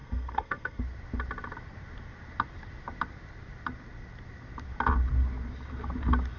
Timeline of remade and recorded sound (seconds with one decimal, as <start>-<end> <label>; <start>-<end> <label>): 0.0-0.8 remade; 0.8-6.4 recorded